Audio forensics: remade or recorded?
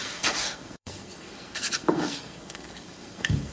remade